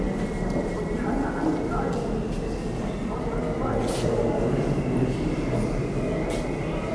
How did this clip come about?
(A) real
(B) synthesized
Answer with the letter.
A